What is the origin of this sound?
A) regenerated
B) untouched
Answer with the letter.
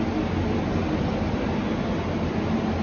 B